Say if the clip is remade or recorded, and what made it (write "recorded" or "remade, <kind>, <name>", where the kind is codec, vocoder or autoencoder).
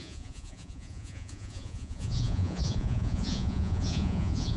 remade, vocoder, Vocos